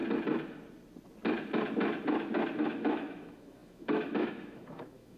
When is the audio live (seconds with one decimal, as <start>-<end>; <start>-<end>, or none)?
0.0-2.6